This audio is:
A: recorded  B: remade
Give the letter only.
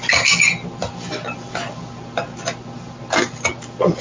A